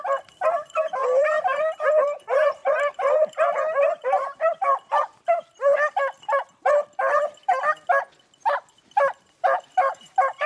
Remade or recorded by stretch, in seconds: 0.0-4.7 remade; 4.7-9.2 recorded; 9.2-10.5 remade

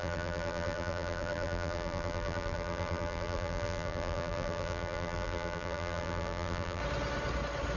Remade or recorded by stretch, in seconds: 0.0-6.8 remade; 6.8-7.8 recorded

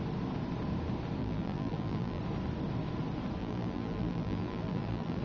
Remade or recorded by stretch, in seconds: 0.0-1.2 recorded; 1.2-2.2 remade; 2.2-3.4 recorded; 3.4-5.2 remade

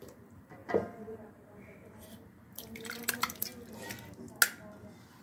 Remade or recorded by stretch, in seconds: 0.0-3.5 remade; 3.5-5.2 recorded

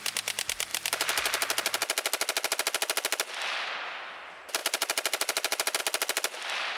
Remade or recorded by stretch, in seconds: 0.0-4.6 recorded; 4.6-5.8 remade; 5.8-6.8 recorded

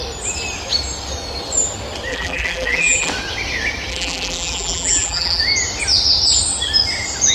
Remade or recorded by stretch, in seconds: 0.0-2.1 recorded; 2.1-3.1 remade; 3.1-3.9 recorded; 3.9-5.4 remade; 5.4-7.3 recorded

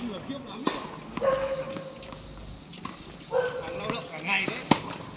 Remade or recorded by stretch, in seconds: 0.0-2.7 recorded; 2.7-5.2 remade